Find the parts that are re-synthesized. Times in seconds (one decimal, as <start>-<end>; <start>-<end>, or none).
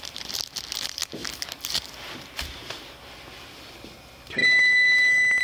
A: 4.4-5.4